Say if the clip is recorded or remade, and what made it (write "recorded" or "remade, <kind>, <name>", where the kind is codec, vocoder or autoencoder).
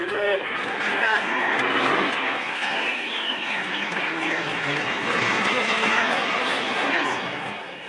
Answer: remade, codec, SNAC